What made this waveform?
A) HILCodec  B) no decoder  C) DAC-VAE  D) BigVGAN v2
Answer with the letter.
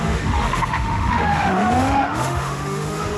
C